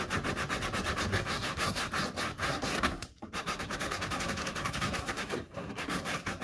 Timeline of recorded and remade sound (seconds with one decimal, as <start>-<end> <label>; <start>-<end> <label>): 0.0-1.1 recorded; 1.1-1.9 remade; 1.9-2.4 recorded; 2.4-6.4 remade